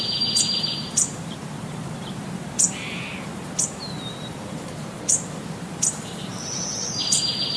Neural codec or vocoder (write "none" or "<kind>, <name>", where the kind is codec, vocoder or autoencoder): vocoder, BigVGAN v2